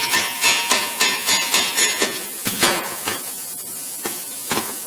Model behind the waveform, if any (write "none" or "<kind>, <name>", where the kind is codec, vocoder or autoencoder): vocoder, Vocos